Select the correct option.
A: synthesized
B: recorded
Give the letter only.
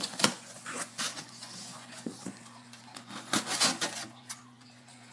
A